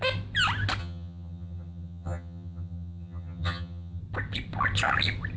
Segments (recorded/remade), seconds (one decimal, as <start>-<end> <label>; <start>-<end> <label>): 0.0-0.8 recorded; 0.8-4.0 remade; 4.0-5.4 recorded